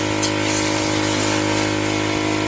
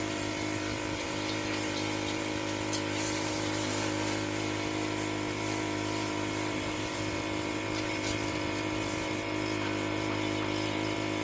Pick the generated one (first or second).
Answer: second